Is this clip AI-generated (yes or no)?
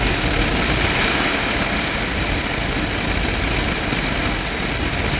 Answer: no